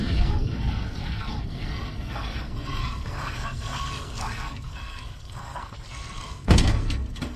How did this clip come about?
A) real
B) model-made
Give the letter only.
B